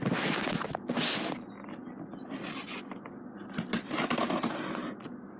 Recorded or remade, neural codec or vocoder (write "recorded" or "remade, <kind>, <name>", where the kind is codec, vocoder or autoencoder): recorded